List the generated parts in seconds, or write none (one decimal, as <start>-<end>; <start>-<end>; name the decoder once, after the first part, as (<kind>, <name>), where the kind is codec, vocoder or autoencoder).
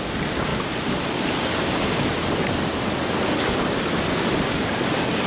0.5-1.4 (vocoder, BigVGAN v2)